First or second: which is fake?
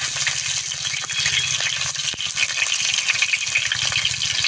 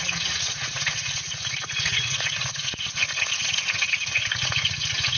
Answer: second